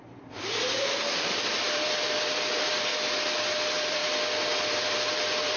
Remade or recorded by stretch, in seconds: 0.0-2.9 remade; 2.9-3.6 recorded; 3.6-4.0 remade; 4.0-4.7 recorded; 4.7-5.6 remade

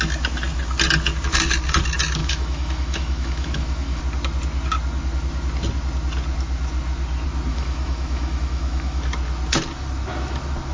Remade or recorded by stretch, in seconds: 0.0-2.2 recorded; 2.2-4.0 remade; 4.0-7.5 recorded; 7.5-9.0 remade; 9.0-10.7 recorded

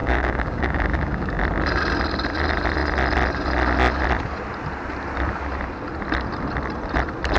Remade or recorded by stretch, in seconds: 0.0-1.4 remade; 1.4-7.4 recorded